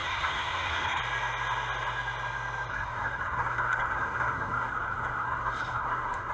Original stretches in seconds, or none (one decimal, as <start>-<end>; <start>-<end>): 1.0-2.7